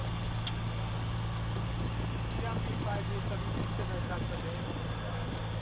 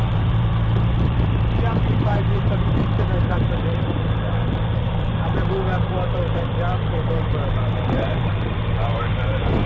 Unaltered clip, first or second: first